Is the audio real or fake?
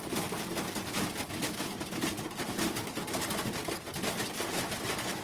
real